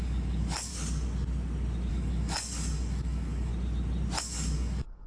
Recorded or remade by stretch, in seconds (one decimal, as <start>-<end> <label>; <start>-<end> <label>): 0.0-0.7 remade; 0.7-1.9 recorded; 1.9-3.5 remade; 3.5-4.2 recorded; 4.2-5.1 remade